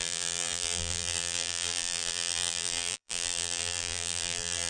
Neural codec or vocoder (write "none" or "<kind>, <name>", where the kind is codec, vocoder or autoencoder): vocoder, BigVGAN v2